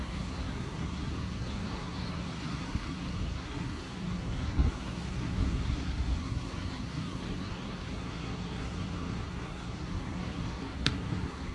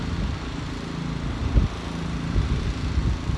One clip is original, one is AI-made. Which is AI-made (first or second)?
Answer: first